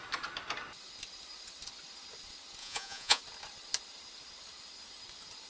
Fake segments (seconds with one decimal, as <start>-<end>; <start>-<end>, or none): 2.6-3.2